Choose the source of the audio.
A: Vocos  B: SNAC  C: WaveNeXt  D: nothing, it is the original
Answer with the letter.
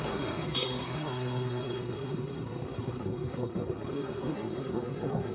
B